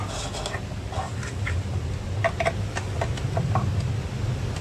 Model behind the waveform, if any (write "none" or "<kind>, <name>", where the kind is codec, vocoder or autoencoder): none